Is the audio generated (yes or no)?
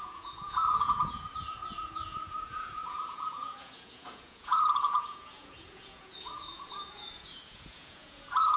yes